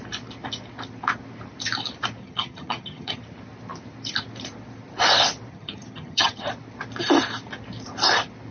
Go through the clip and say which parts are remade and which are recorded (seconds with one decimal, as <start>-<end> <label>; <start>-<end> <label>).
0.0-2.2 recorded; 2.2-3.2 remade; 3.2-5.5 recorded; 5.5-6.4 remade; 6.4-8.5 recorded